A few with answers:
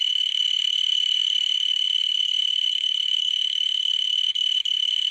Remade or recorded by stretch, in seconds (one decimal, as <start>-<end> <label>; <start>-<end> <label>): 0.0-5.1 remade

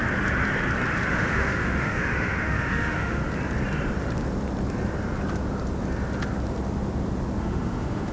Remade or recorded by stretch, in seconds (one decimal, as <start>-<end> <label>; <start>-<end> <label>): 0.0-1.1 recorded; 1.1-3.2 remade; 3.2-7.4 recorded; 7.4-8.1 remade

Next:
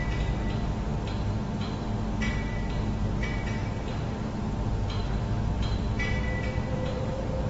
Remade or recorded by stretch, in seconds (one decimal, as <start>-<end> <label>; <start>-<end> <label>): 0.0-3.6 recorded; 3.6-4.1 remade; 4.1-5.0 recorded; 5.0-5.9 remade; 5.9-7.5 recorded

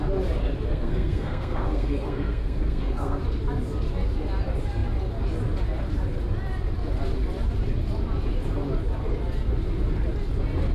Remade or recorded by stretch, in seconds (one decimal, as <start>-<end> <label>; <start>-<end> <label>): 0.0-0.7 recorded; 0.7-3.2 remade; 3.2-10.7 recorded